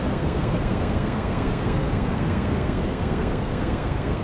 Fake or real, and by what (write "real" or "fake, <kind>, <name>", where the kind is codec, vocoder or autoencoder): fake, codec, SNAC